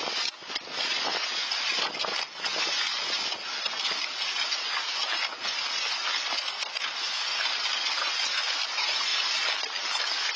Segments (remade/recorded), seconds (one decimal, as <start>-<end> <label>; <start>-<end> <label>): 0.0-10.4 recorded